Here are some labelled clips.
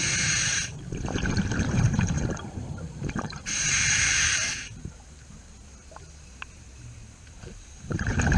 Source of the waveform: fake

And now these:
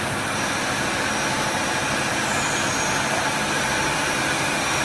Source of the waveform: real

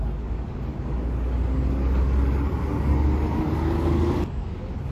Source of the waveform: fake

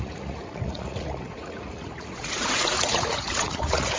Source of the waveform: fake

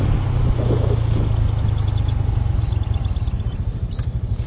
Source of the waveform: real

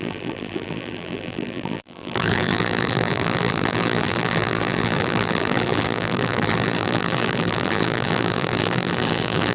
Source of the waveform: fake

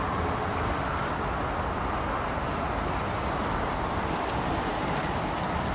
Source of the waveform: real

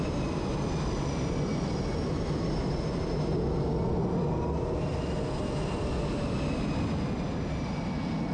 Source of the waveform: real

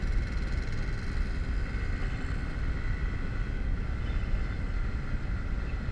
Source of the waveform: fake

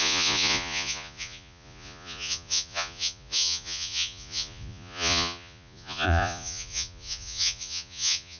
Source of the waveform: fake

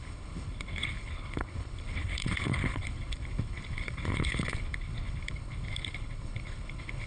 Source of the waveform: fake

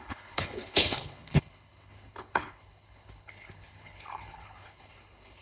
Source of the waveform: fake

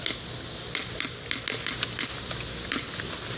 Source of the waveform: real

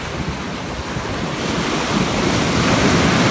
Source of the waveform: real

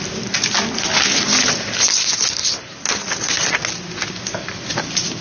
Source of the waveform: real